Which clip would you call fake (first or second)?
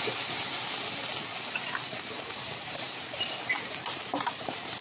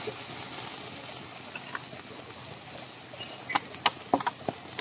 first